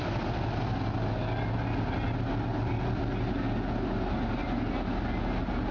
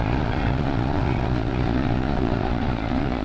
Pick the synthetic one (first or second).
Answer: second